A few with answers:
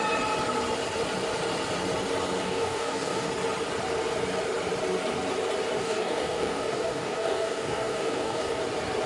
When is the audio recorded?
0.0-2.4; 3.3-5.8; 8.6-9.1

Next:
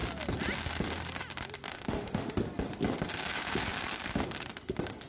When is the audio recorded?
0.0-1.7; 2.4-5.1

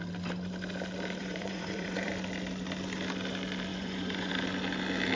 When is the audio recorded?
0.0-1.2; 2.1-3.7; 4.3-5.2

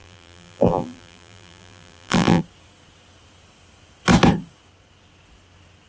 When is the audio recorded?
2.4-5.9

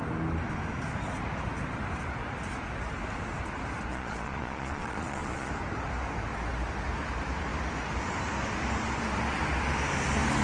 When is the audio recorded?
0.0-3.9; 5.5-10.4

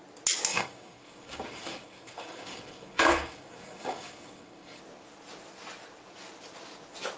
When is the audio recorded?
0.0-0.5; 4.8-7.2

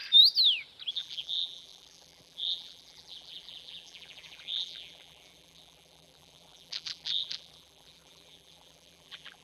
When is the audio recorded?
0.0-0.9